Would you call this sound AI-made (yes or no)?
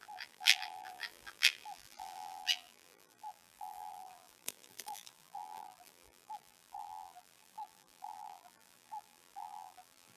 yes